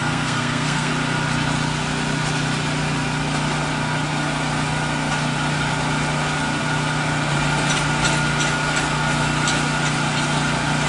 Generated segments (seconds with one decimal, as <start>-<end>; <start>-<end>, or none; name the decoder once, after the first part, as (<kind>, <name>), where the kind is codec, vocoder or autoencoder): 0.0-0.9 (codec, SNAC)